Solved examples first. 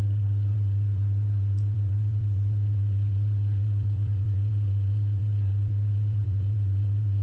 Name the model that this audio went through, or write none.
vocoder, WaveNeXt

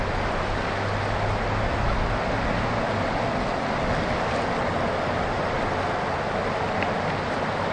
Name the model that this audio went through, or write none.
none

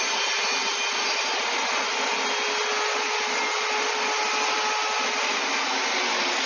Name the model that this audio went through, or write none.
none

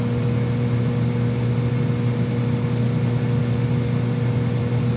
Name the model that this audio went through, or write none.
none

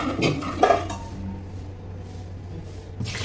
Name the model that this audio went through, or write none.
none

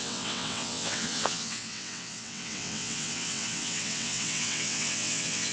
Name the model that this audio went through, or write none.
vocoder, WaveNeXt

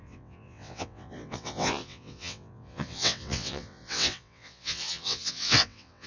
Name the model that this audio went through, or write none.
vocoder, WaveNeXt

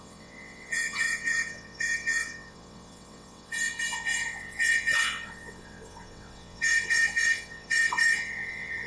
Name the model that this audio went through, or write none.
vocoder, WaveNeXt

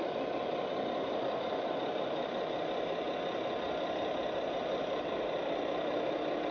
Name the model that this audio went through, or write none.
none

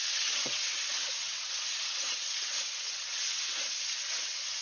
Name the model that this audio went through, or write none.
vocoder, WaveNeXt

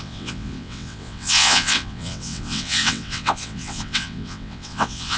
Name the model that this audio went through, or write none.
vocoder, WaveNeXt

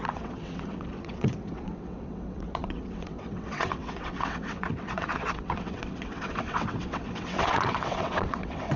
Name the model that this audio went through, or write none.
vocoder, WaveNeXt